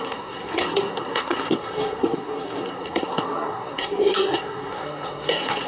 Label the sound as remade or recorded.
remade